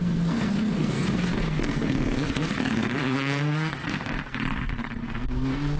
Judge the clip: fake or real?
fake